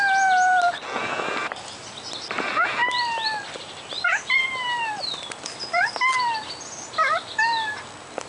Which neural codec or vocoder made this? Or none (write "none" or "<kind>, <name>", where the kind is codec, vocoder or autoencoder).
none